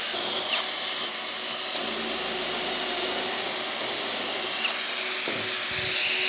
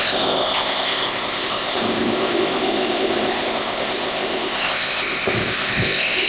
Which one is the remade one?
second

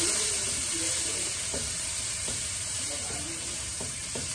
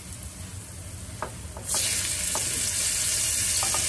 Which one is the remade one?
first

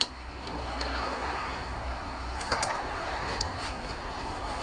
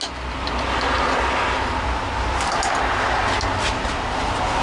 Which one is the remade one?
first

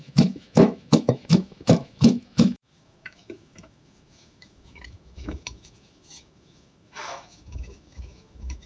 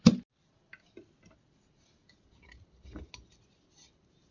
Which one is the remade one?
first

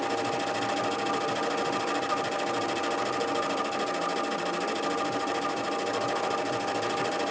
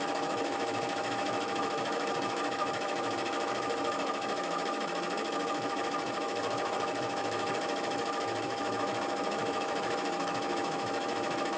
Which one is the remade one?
second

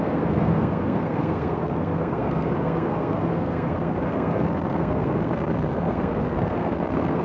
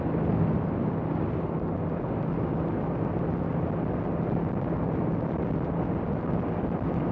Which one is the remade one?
first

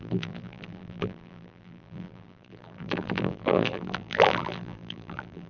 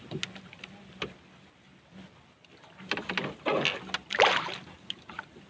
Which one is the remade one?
first